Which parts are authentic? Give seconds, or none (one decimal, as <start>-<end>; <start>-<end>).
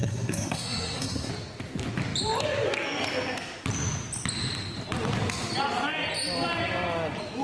1.3-7.4